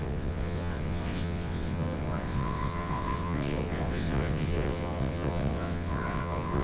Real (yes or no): no